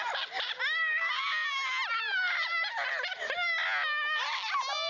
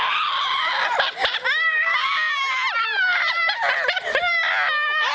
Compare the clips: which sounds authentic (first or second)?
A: first